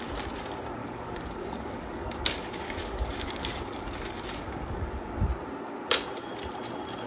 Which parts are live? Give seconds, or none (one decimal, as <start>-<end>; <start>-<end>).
0.0-0.8; 5.1-7.1